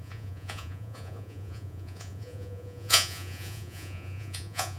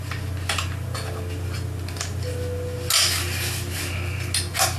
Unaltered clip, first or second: second